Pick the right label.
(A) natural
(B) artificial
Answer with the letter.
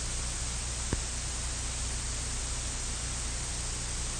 A